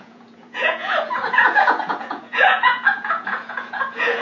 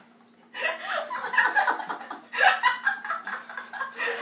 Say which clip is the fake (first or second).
first